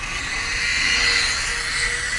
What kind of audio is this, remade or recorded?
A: recorded